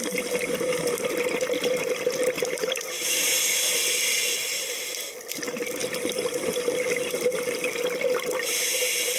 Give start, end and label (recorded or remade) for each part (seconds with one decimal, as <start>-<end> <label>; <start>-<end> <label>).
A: 0.0-9.2 recorded